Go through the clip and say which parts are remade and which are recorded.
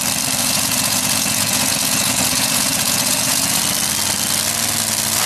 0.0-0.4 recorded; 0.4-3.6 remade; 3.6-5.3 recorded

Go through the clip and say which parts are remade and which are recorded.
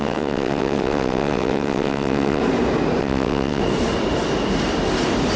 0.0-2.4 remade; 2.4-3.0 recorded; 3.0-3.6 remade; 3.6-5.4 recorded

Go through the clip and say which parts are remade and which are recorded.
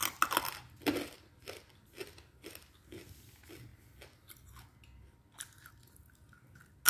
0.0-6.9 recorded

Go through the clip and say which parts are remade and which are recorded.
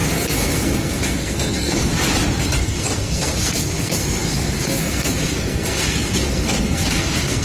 0.0-1.9 remade; 1.9-2.6 recorded; 2.6-7.4 remade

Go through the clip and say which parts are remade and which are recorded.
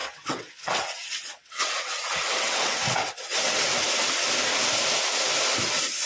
0.0-3.7 remade; 3.7-6.1 recorded